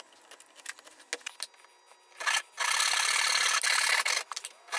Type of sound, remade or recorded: recorded